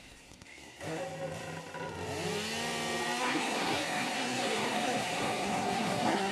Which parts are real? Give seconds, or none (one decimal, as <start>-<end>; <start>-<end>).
1.0-3.2